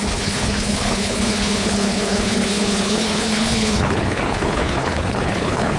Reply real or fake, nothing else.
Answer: fake